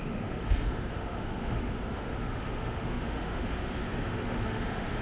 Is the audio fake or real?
fake